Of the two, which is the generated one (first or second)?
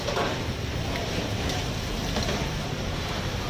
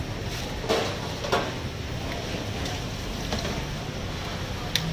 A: first